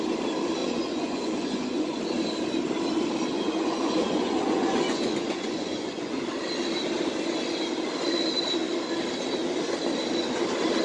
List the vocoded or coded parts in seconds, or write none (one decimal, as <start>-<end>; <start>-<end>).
0.6-2.0; 3.3-6.2